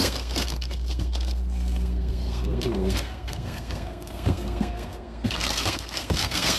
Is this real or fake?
fake